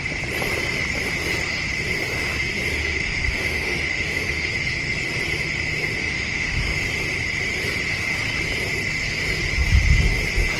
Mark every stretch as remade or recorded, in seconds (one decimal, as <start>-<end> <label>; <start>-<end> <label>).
0.0-2.8 recorded; 2.8-4.5 remade; 4.5-6.0 recorded; 6.0-6.8 remade; 6.8-10.6 recorded

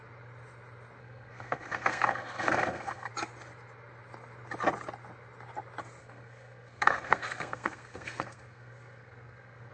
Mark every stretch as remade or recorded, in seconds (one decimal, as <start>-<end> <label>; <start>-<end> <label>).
0.0-1.0 recorded; 1.0-3.1 remade; 3.1-6.0 recorded; 6.0-9.7 remade

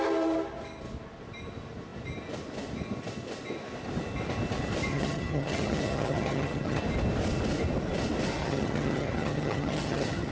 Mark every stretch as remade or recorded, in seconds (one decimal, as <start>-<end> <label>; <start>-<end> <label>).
0.0-4.9 recorded; 4.9-6.8 remade; 6.8-8.4 recorded; 8.4-10.3 remade

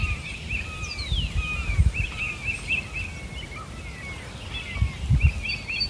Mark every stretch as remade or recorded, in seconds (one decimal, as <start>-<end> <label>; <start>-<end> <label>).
0.0-2.7 remade; 2.7-5.9 recorded

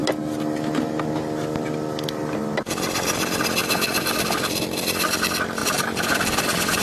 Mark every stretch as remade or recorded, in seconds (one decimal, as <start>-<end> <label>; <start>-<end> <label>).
0.0-3.6 recorded; 3.6-4.8 remade; 4.8-5.6 recorded; 5.6-6.8 remade

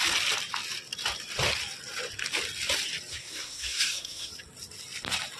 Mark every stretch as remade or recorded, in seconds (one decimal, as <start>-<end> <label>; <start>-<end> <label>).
0.0-3.1 recorded; 3.1-4.3 remade; 4.3-5.4 recorded

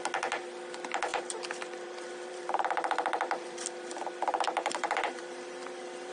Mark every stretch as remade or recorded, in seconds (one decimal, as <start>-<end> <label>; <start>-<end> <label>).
0.0-1.1 recorded; 1.1-3.9 remade; 3.9-4.3 recorded; 4.3-6.1 remade